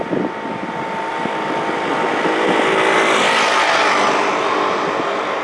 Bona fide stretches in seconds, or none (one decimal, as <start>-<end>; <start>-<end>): 0.0-1.1; 4.3-5.4